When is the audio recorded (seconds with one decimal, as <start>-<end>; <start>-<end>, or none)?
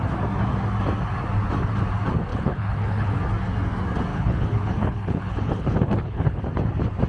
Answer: 0.0-2.3; 3.2-4.1; 6.4-7.1